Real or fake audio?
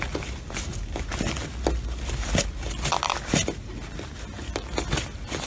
real